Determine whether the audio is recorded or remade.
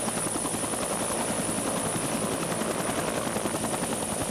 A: recorded